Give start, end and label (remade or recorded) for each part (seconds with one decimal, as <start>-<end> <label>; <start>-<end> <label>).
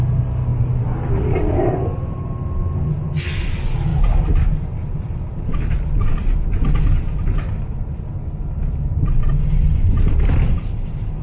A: 0.0-11.2 recorded